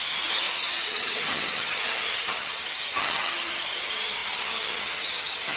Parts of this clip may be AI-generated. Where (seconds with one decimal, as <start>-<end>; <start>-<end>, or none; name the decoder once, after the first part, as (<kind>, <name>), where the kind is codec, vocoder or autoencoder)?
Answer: 0.0-5.6 (vocoder, HiFi-GAN)

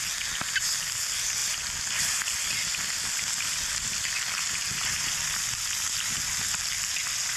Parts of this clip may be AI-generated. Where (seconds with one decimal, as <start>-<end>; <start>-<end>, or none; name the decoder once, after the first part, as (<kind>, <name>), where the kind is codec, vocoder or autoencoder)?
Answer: none

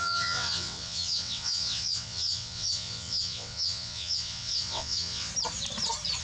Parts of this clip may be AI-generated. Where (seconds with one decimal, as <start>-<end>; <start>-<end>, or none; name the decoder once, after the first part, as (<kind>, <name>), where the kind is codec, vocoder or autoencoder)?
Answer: 0.0-5.3 (vocoder, WaveNeXt)

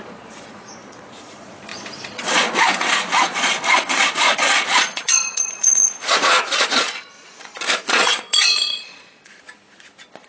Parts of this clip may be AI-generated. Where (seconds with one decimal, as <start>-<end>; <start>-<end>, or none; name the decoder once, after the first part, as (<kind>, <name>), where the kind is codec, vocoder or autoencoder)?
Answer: 0.0-10.3 (vocoder, Vocos)

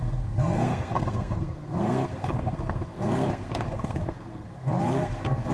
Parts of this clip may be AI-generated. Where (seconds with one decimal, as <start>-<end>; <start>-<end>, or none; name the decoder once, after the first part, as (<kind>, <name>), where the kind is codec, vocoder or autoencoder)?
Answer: 0.0-5.5 (codec, SNAC)

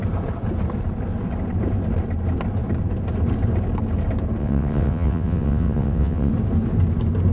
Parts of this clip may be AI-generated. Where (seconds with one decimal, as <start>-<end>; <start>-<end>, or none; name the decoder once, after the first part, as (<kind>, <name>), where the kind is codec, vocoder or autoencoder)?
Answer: 4.4-6.3 (vocoder, WaveNeXt)

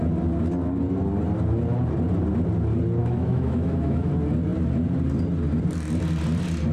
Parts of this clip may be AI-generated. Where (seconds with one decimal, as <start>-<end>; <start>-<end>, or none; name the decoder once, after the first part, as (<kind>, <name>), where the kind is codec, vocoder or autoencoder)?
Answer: 3.0-4.1 (autoencoder, DAC-VAE)

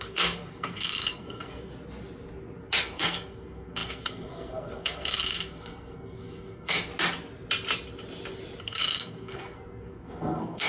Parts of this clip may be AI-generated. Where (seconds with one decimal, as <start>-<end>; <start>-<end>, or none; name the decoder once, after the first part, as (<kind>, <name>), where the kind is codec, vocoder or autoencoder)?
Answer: 0.0-1.7 (codec, SNAC); 2.8-6.9; 8.6-10.7